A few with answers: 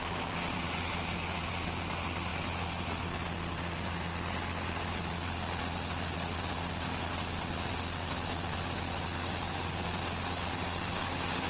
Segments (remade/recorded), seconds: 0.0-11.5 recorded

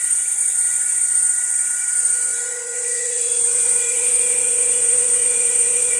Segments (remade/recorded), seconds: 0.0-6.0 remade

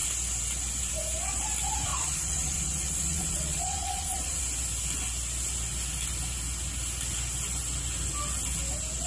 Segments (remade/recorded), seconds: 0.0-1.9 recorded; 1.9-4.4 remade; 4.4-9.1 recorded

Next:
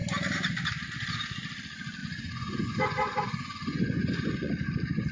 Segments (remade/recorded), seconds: 0.0-2.0 recorded; 2.0-4.5 remade; 4.5-5.1 recorded